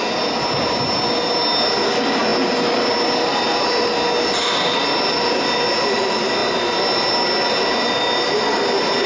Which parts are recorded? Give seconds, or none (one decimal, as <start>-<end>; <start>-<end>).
0.0-9.1